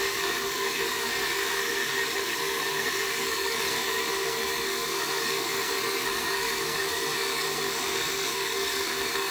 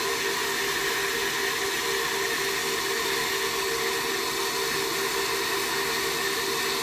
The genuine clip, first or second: second